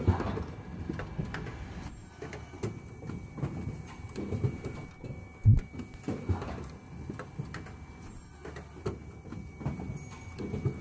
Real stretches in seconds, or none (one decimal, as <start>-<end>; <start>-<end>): 0.0-10.8